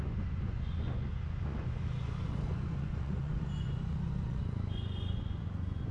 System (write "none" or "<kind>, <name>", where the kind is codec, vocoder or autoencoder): vocoder, Vocos